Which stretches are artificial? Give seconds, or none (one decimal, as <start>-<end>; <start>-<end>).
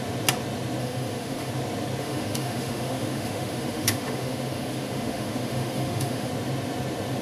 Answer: 0.8-1.5; 2.0-6.3